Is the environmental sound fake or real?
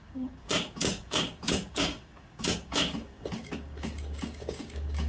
fake